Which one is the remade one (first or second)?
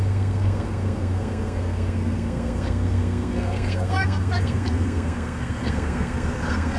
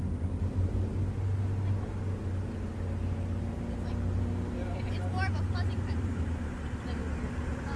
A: first